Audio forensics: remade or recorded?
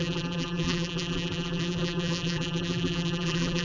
remade